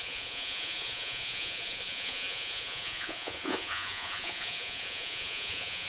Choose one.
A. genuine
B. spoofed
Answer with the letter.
B